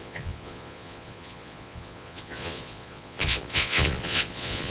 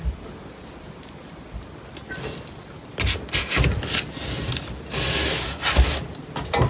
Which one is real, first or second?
second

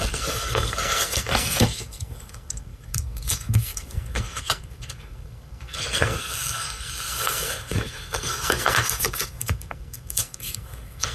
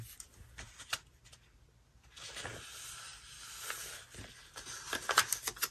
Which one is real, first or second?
second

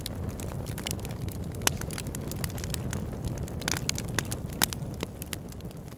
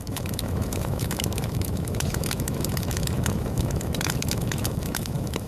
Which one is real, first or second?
first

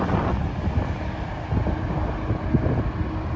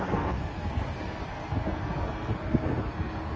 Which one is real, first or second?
first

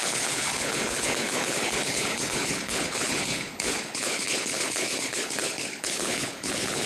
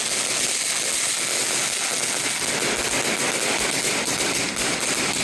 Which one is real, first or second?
second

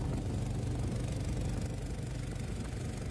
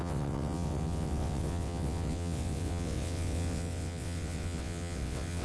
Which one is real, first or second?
first